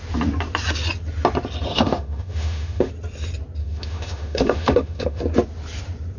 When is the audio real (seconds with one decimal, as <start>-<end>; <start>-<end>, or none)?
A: 0.0-1.7; 2.9-3.6; 5.2-6.2